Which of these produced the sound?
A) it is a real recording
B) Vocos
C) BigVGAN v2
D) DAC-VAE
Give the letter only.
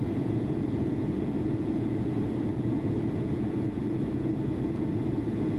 B